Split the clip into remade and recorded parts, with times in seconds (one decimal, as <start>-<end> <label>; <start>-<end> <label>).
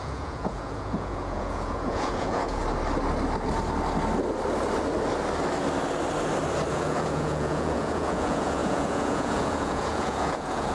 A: 0.0-2.6 remade; 2.6-6.7 recorded; 6.7-10.7 remade